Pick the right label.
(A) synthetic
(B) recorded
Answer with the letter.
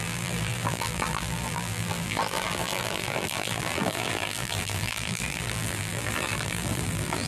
A